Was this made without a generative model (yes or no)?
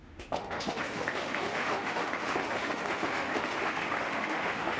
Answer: no